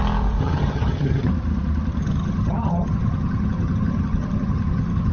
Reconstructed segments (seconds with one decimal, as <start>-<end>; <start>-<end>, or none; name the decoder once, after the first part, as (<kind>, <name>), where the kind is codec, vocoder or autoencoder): 0.4-1.3 (vocoder, HiFi-GAN); 2.0-5.1